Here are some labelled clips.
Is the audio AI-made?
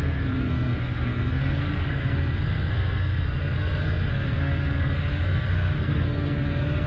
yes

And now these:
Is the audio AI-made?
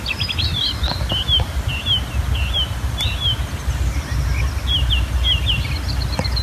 no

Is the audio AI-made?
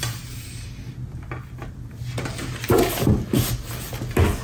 no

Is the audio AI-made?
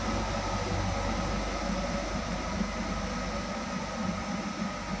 no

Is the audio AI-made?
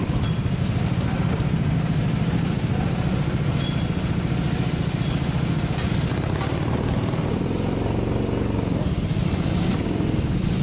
no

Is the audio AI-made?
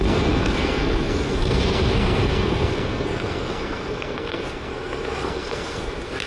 yes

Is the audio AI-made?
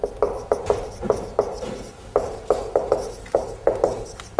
no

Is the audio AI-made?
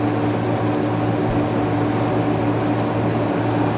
no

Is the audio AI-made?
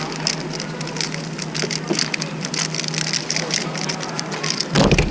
no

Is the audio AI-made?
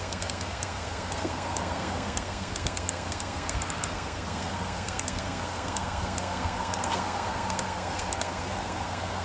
yes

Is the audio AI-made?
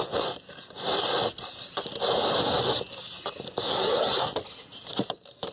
no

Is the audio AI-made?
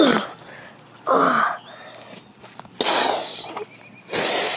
no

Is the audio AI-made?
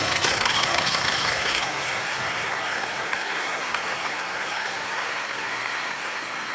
yes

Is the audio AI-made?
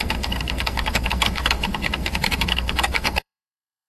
yes